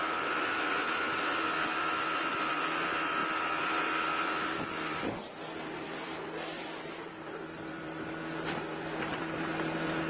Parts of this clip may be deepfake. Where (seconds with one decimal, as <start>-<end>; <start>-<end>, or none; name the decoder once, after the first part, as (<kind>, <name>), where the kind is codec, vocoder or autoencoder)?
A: 0.0-3.2 (vocoder, BigVGAN v2); 4.1-10.1